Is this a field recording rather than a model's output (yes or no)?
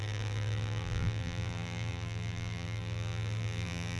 no